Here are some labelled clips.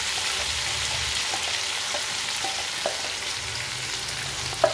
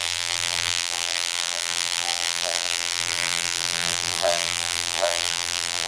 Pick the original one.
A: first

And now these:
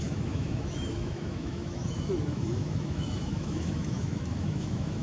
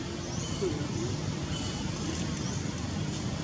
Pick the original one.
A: second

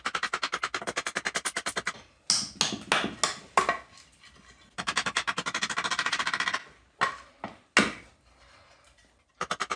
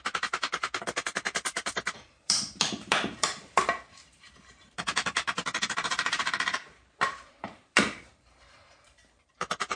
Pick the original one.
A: first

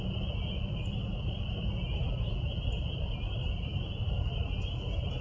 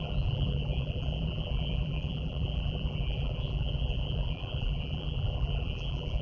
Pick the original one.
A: first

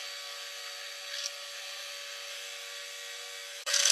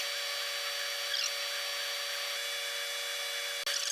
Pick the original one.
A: second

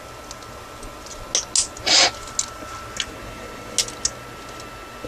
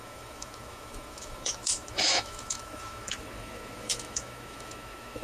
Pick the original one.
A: first